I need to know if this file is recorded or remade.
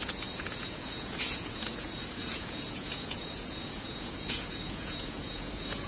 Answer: remade